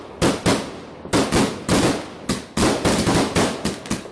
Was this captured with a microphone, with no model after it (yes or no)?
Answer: yes